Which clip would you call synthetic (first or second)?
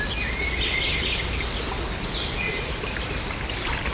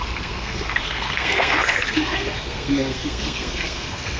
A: second